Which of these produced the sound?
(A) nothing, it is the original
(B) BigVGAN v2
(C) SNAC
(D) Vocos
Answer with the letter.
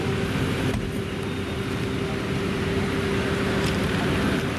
A